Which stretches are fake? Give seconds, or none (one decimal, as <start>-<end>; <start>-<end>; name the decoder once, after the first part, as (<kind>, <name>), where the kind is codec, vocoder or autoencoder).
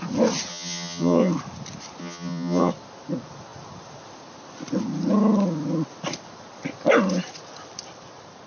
0.5-1.3 (vocoder, HiFi-GAN); 2.0-2.7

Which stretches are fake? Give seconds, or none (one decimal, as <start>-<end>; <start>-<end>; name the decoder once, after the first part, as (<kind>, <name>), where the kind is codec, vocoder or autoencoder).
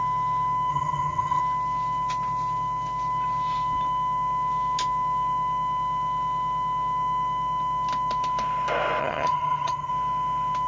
0.7-1.4 (vocoder, HiFi-GAN); 9.0-9.9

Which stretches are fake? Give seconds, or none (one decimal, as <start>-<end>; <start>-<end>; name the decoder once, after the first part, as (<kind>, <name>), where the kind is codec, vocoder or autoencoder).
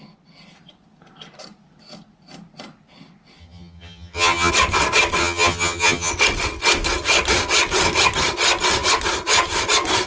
3.4-4.5 (vocoder, HiFi-GAN); 5.2-6.1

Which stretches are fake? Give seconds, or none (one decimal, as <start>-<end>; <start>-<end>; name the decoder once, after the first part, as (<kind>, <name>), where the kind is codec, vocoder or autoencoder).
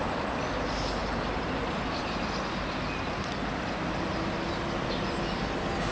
none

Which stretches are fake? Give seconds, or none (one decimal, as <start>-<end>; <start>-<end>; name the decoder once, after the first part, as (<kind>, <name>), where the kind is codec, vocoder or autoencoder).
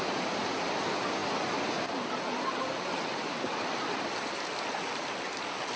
none